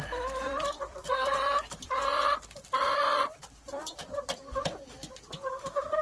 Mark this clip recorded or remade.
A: remade